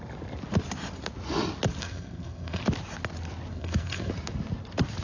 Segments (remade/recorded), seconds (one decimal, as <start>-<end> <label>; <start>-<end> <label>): 0.0-1.8 recorded; 1.8-2.6 remade; 2.6-3.5 recorded; 3.5-4.1 remade; 4.1-5.0 recorded